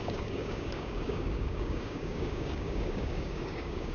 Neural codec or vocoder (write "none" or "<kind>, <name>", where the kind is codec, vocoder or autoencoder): codec, DAC